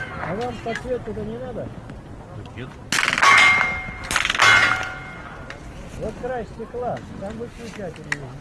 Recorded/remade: recorded